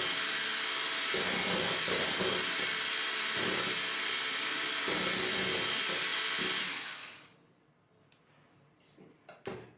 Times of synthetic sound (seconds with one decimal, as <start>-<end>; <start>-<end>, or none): none